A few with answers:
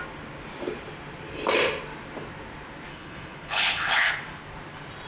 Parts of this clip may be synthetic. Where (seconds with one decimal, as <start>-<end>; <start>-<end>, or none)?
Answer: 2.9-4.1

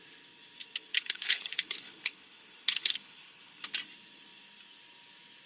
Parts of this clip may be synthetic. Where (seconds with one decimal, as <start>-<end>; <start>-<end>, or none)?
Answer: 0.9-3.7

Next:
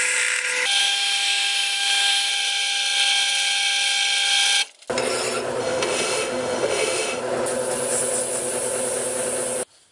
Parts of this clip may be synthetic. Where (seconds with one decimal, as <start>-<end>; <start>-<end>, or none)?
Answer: 0.8-2.3; 5.6-7.2

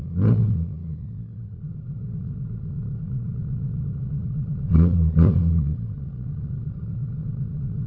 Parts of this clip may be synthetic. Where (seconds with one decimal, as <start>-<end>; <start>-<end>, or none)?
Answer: 0.0-7.9

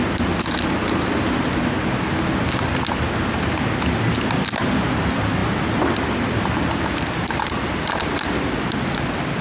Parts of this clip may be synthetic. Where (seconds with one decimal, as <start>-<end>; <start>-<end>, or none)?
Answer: none